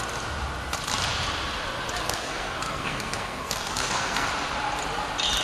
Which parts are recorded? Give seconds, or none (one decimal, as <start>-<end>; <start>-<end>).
0.0-2.0; 4.3-5.4